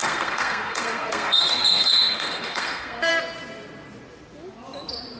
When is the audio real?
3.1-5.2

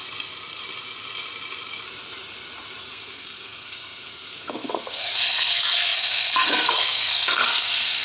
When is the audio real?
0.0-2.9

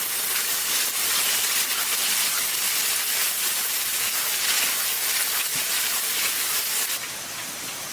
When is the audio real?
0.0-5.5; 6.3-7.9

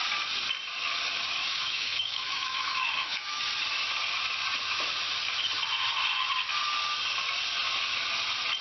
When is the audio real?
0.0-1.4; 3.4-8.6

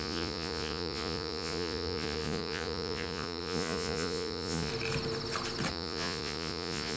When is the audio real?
4.7-5.7

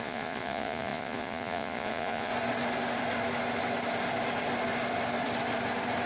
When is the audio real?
2.3-6.1